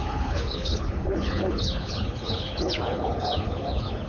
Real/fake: fake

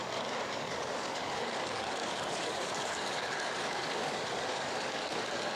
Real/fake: fake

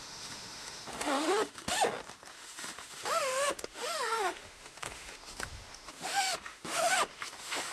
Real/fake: fake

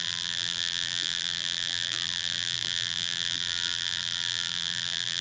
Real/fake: fake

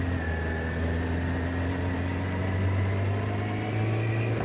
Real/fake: real